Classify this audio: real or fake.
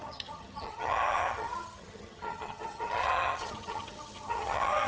fake